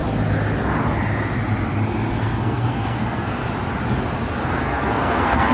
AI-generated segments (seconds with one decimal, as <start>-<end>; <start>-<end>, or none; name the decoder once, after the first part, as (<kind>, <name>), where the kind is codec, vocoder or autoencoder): 2.1-3.4 (codec, SNAC); 4.5-5.5

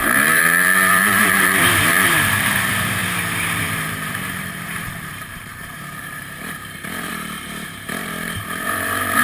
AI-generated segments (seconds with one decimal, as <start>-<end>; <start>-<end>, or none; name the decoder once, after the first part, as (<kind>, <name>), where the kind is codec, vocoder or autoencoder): 0.0-3.0 (vocoder, BigVGAN v2); 3.6-9.2

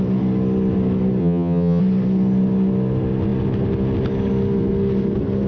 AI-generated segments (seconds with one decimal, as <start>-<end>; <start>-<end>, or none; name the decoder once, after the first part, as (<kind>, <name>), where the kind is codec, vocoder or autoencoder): 1.2-1.8 (vocoder, HiFi-GAN)

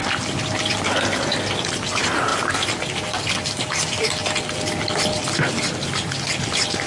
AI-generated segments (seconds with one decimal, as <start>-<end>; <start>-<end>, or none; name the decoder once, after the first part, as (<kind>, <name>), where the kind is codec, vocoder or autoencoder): none

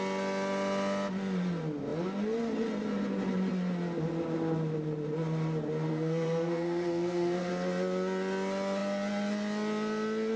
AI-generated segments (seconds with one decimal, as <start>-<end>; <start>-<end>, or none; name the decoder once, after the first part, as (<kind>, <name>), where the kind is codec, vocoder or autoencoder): 5.9-7.5 (codec, SNAC)

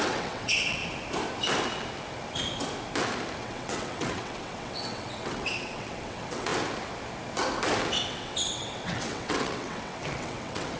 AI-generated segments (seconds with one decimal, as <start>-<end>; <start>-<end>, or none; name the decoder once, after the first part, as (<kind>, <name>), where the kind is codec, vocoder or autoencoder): 0.0-0.8 (vocoder, WaveNeXt); 3.4-6.5; 8.0-10.8

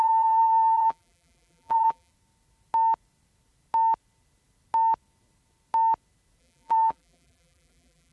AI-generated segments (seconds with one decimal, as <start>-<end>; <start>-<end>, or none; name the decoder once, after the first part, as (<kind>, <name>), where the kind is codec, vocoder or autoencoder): 0.0-2.1 (vocoder, BigVGAN v2); 6.4-8.1

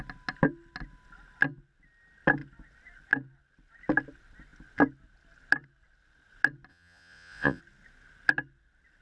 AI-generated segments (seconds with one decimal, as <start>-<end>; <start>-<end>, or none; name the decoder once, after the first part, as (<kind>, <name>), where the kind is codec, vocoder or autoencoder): 6.7-7.6 (vocoder, Vocos)